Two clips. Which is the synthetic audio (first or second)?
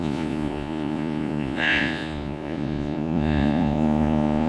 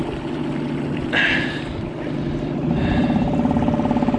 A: first